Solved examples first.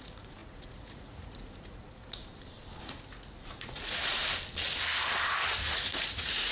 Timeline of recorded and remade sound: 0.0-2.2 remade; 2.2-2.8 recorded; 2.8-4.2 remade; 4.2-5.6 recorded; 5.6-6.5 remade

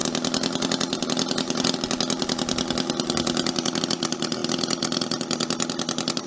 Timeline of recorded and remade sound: 0.0-6.3 recorded

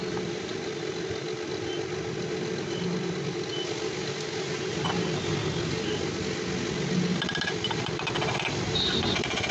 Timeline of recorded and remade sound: 0.0-7.1 recorded; 7.1-9.5 remade